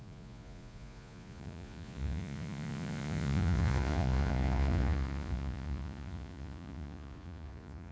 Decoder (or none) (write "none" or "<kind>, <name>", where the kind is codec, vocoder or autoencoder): vocoder, Vocos